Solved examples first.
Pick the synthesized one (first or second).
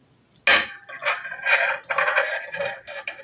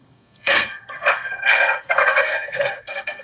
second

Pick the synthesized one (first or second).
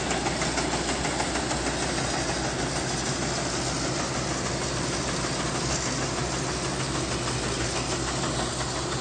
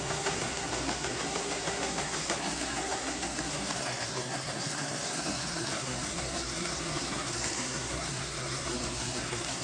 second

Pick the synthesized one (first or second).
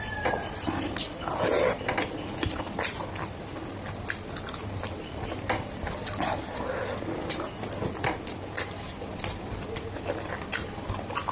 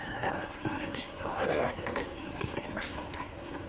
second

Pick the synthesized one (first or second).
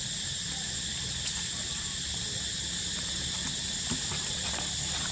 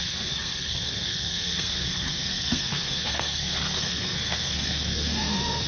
second